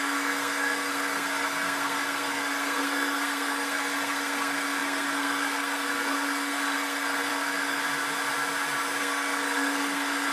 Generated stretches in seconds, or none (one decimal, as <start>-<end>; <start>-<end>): 0.0-7.8; 9.0-10.3